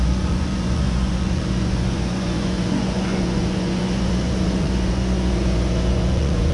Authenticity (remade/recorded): remade